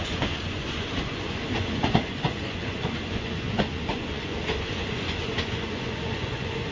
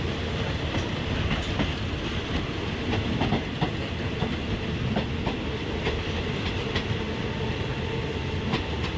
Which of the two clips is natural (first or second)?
second